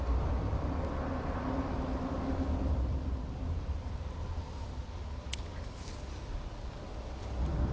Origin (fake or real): real